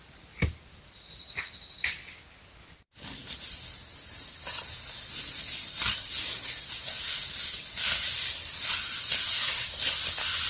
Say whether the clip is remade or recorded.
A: recorded